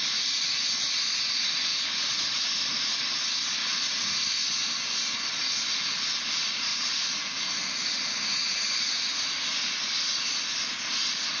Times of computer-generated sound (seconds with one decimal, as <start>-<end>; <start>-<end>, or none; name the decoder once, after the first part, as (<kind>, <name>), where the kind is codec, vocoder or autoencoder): 1.7-2.5 (vocoder, Vocos); 3.6-4.2; 6.7-10.0